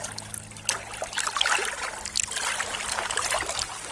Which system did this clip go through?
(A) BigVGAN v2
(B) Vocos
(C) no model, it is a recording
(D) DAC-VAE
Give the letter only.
C